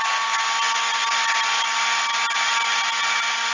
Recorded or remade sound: recorded